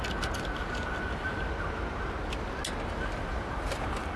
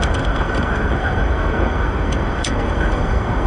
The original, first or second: first